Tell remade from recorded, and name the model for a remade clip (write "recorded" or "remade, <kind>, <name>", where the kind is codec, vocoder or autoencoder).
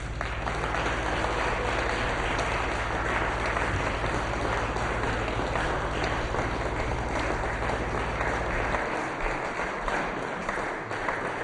recorded